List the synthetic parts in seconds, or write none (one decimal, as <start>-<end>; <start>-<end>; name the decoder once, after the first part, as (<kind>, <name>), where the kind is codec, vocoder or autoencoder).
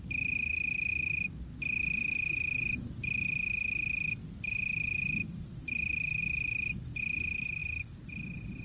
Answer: 0.0-0.9 (vocoder, BigVGAN v2); 4.5-6.2; 7.0-8.6